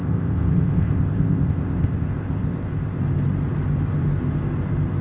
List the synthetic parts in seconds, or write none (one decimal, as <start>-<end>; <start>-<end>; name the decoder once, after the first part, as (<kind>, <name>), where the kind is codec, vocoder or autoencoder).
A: 0.0-3.0 (codec, ZipCodec)